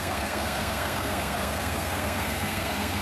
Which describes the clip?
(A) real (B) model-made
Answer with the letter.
B